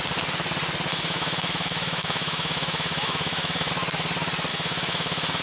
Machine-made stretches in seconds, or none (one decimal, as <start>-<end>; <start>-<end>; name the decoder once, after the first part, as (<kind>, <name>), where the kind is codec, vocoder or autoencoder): 0.9-3.7 (autoencoder, DAC-VAE); 4.5-5.4